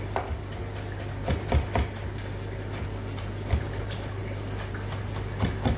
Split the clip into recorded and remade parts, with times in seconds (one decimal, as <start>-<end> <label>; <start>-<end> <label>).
0.0-5.8 recorded